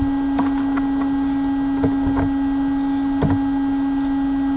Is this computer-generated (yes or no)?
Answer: no